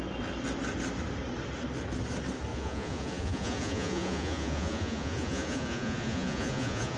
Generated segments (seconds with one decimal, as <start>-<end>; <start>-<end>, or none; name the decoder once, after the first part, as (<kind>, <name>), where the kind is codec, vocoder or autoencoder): 2.5-7.0 (vocoder, Vocos)